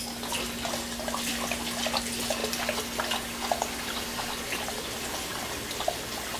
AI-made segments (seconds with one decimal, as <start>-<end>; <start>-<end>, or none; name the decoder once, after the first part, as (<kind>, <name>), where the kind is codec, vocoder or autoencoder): none